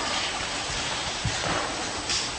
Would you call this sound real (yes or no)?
yes